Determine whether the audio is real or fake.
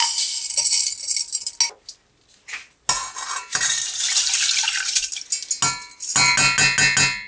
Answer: real